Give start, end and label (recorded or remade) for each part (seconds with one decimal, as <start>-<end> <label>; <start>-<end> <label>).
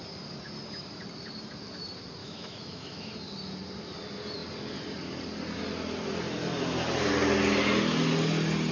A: 0.0-2.2 recorded; 2.2-3.1 remade; 3.1-8.7 recorded